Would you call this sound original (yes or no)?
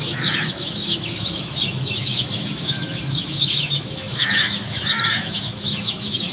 no